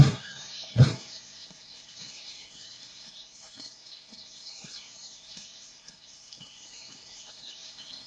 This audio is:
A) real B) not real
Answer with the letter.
B